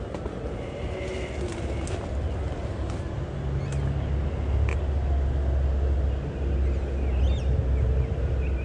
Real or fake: real